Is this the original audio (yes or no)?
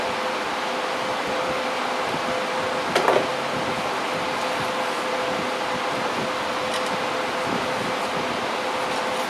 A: yes